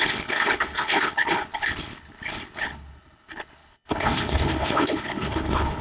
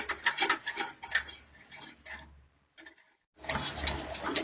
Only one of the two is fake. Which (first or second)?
first